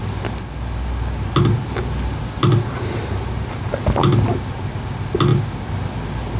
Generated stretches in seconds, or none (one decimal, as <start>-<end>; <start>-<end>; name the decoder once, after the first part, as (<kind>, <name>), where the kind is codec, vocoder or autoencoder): none